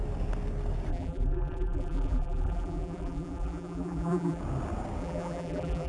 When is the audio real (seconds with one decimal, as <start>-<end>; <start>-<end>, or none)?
0.0-0.9; 4.4-5.0